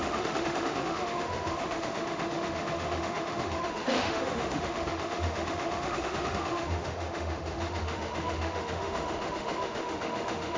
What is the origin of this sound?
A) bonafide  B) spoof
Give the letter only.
B